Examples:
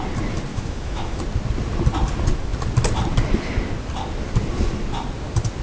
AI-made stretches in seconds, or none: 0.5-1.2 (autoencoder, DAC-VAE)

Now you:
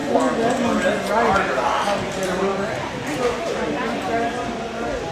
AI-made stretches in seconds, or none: none

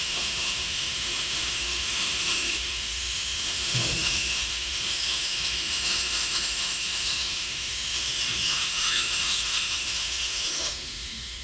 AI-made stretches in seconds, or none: 0.0-11.4 (autoencoder, DAC-VAE)